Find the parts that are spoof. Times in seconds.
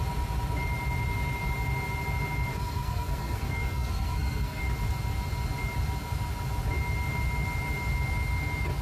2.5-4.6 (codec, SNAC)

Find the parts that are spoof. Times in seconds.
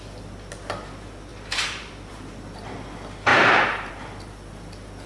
1.3-2.1 (vocoder, BigVGAN v2); 3.3-3.9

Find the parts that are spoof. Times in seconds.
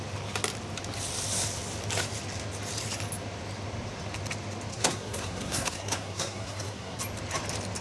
4.7-7.0 (codec, SNAC)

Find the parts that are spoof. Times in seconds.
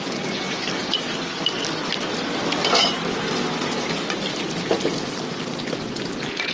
0.8-4.7 (vocoder, BigVGAN v2)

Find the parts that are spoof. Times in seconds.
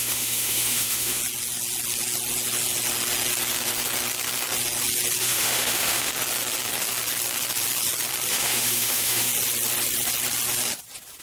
0.0-1.2 (autoencoder, DAC-VAE); 5.2-6.1; 8.3-9.3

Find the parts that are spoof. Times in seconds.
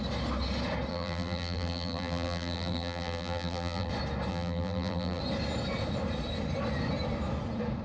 0.9-3.9 (vocoder, BigVGAN v2); 4.3-5.2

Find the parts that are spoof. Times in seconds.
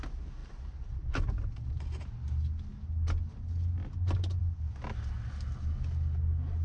0.4-2.1 (vocoder, BigVGAN v2)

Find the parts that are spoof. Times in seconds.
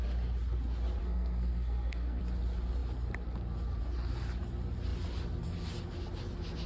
1.0-2.2 (codec, SNAC)